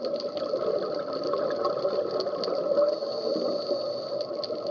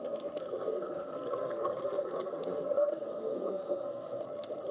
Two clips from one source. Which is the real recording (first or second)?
first